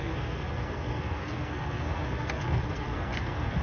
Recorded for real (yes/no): no